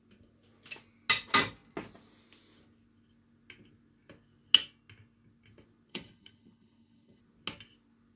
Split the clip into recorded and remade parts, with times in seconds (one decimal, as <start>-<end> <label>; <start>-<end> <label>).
0.0-5.9 recorded; 5.9-7.2 remade; 7.2-8.2 recorded